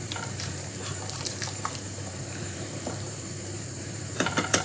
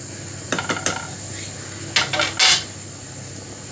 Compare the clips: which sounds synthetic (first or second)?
first